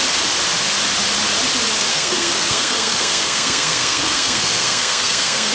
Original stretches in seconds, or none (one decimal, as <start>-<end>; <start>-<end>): 0.0-1.9